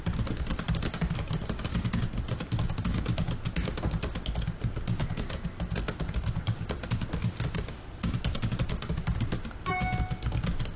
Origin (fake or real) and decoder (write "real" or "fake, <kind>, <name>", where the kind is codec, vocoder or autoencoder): real